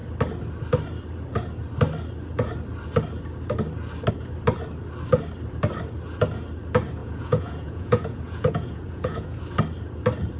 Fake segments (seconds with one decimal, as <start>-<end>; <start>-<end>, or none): 7.0-9.4